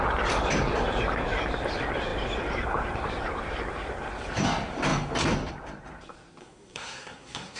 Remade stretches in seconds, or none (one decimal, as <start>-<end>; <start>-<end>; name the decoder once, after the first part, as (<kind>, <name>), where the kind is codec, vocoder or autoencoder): 6.4-7.6 (codec, SNAC)